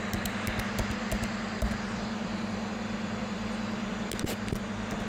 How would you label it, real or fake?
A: fake